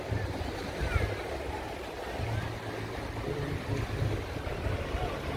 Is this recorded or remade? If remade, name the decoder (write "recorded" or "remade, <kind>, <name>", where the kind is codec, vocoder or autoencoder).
recorded